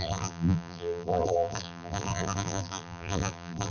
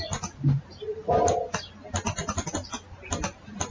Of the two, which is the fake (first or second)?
first